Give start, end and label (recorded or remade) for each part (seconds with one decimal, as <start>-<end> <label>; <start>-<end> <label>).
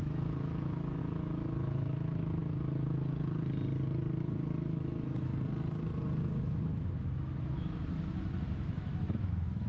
0.0-2.4 remade; 2.4-4.2 recorded; 4.2-5.3 remade; 5.3-6.3 recorded; 6.3-9.7 remade